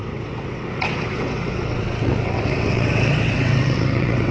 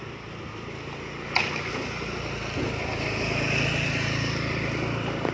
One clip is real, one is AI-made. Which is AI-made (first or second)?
first